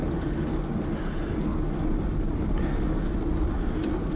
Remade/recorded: recorded